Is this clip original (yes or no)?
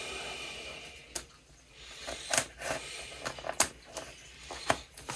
yes